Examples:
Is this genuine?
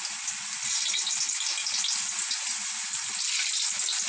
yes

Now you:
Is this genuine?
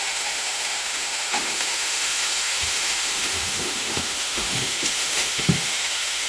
no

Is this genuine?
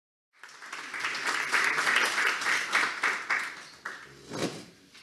yes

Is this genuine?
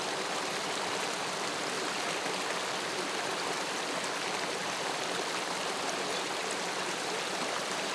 yes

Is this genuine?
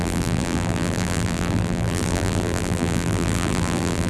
no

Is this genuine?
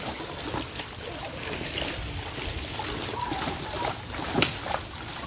yes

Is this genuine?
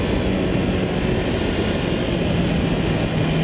yes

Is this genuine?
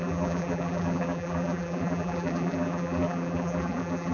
no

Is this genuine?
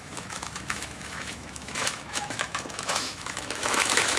no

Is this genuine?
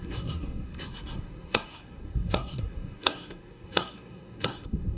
no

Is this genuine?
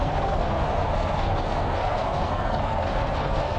no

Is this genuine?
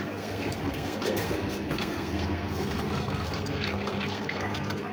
no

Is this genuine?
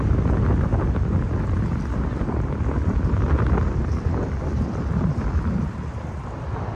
yes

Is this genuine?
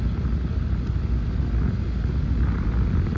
yes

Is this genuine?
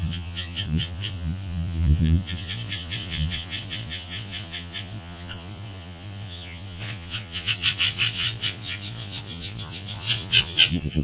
no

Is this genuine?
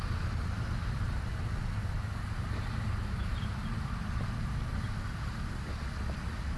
yes